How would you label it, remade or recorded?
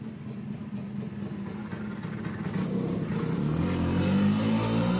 recorded